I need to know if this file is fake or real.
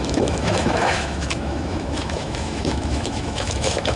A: fake